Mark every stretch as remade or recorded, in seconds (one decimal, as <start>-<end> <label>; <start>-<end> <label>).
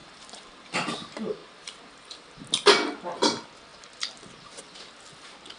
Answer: 0.0-0.6 remade; 0.6-1.4 recorded; 1.4-2.2 remade; 2.2-3.7 recorded; 3.7-4.6 remade; 4.6-5.6 recorded